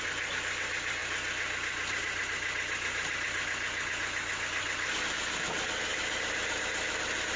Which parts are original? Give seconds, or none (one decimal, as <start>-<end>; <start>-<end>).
0.0-7.4